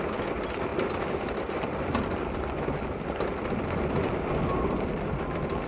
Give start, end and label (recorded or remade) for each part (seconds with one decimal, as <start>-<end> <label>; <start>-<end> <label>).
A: 0.0-5.7 recorded